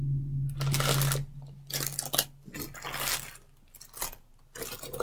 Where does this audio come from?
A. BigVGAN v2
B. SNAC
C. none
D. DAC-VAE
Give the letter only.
C